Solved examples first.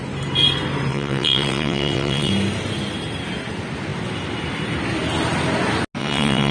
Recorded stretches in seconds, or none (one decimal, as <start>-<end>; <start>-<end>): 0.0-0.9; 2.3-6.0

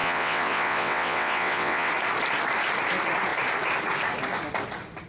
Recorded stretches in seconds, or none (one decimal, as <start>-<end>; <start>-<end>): 1.9-5.1

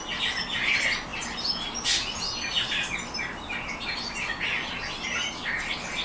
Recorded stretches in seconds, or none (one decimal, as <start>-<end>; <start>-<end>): 0.0-6.0

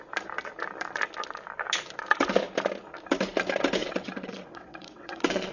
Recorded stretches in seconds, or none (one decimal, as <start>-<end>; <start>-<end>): 0.0-3.8

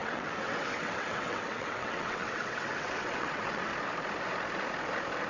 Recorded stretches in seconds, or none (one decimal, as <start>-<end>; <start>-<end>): 3.7-5.3

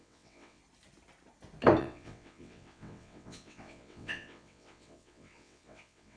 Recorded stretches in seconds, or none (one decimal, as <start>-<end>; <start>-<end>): 0.6-1.8

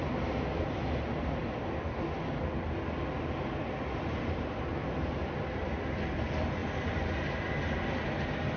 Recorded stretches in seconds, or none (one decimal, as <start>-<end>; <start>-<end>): 0.0-8.6

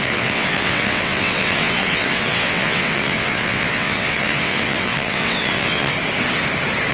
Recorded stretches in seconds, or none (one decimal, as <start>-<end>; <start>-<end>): 5.9-6.9